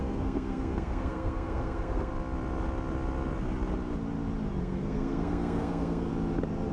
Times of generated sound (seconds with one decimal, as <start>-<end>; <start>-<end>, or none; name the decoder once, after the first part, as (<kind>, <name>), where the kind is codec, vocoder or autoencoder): 0.0-2.1 (codec, SNAC); 4.6-6.1